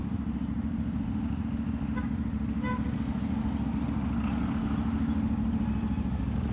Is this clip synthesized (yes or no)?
no